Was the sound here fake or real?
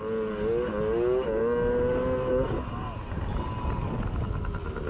real